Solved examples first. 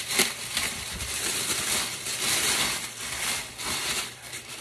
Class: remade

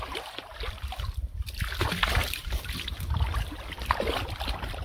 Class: remade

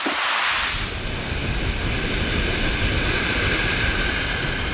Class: recorded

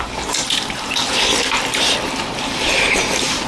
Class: remade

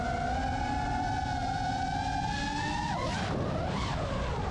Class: recorded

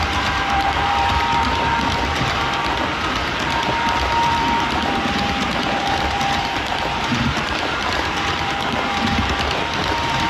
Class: remade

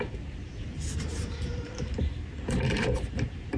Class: remade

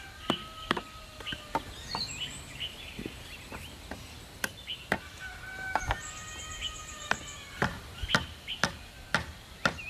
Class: recorded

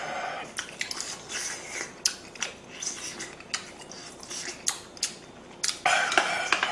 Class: recorded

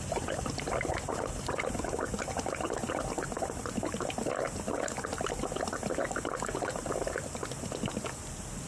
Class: recorded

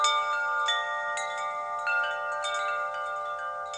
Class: recorded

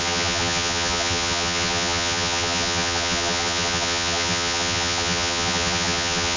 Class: remade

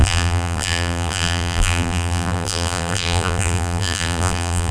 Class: remade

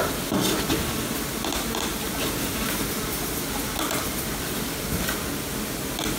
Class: recorded